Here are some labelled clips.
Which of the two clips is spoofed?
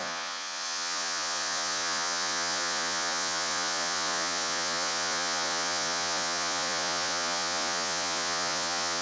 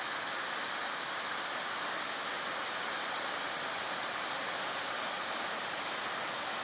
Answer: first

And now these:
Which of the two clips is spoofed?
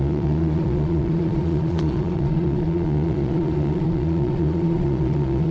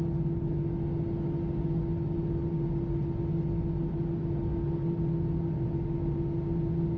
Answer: first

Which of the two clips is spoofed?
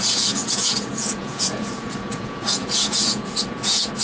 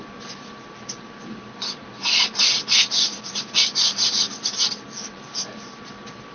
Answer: first